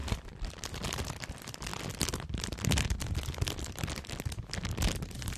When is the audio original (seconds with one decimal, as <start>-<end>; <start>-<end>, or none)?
0.5-5.4